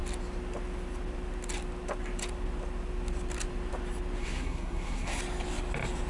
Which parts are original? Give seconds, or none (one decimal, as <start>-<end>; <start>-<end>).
0.0-4.2; 5.2-6.1